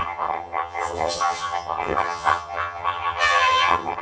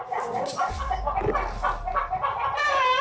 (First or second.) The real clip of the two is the second